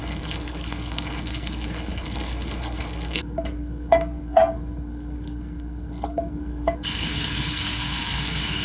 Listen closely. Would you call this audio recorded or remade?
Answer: remade